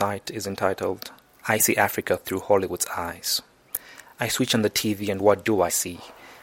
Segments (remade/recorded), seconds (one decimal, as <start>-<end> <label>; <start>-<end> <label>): 0.0-6.4 recorded